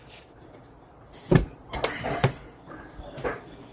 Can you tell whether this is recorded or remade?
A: remade